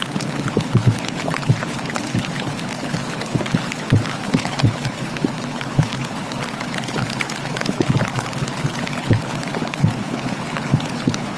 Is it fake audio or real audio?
fake